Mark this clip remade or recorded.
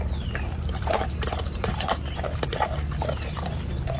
remade